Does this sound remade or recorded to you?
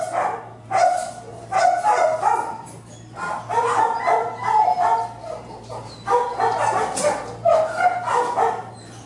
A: recorded